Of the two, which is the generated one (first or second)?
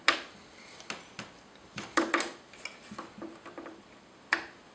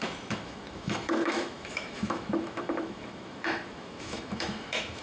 second